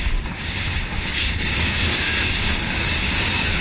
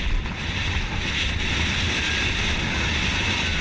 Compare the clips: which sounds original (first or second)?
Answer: second